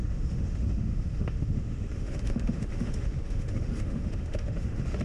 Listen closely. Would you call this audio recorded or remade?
remade